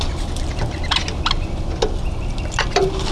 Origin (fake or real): real